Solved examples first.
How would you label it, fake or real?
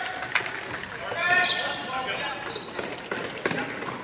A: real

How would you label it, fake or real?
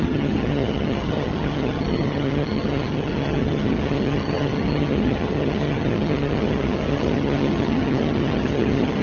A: fake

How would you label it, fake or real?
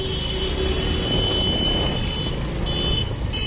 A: real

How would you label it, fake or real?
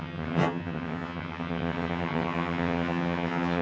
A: fake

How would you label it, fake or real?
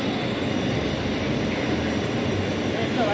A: real